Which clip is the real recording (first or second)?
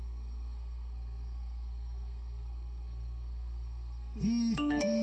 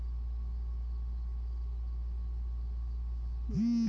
second